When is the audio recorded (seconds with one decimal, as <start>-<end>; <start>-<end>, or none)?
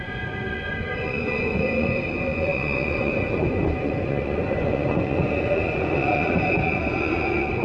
none